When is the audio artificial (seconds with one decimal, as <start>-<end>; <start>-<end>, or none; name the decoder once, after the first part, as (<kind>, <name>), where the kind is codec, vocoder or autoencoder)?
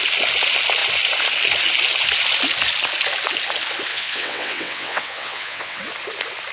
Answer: 3.9-5.8 (vocoder, WaveNeXt)